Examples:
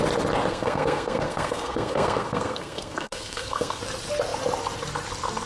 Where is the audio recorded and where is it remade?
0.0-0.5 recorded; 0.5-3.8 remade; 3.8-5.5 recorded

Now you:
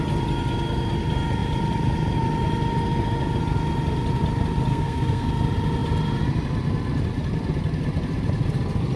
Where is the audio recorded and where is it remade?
0.0-4.7 recorded; 4.7-5.3 remade; 5.3-9.0 recorded

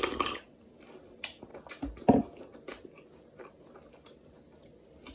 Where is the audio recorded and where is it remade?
0.0-5.1 recorded

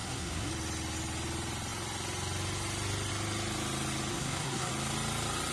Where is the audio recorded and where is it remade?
0.0-0.5 remade; 0.5-4.1 recorded; 4.1-4.7 remade; 4.7-5.5 recorded

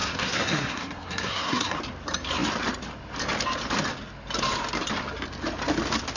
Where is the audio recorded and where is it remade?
0.0-1.8 remade; 1.8-6.2 recorded

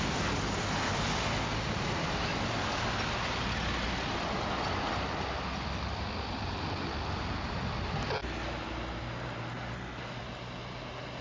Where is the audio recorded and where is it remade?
0.0-11.2 recorded

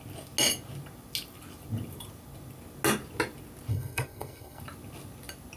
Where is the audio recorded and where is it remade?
0.0-3.7 recorded; 3.7-4.6 remade; 4.6-5.6 recorded

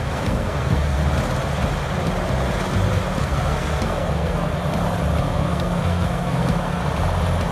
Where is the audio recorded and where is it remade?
0.0-1.0 remade; 1.0-3.2 recorded; 3.2-4.5 remade; 4.5-5.2 recorded; 5.2-6.8 remade; 6.8-7.5 recorded